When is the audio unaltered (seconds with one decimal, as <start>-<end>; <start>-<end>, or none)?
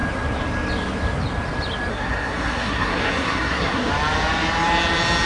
0.0-1.9; 3.9-5.3